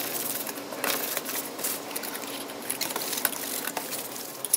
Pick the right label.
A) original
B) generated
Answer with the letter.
A